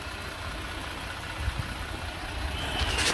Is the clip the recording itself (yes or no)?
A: yes